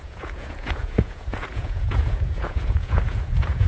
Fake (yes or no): yes